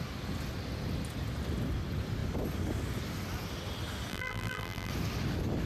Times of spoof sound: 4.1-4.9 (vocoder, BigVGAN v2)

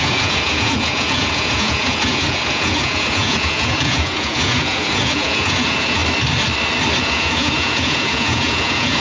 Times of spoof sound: 0.0-6.0 (vocoder, Vocos); 7.0-9.0

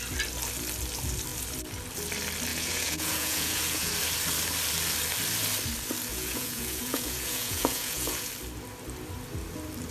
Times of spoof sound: 2.5-3.9 (vocoder, Vocos); 6.1-8.3

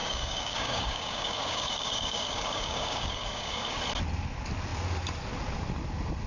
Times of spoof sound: 0.0-3.8 (codec, DAC)

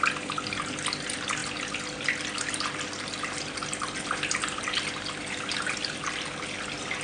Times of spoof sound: none

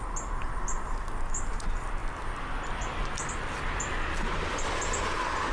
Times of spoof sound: none